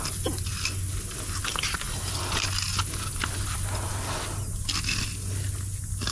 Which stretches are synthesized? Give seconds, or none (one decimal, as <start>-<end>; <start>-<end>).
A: none